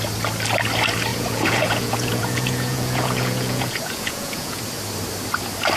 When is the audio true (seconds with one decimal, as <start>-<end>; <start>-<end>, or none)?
0.0-1.1; 4.6-5.8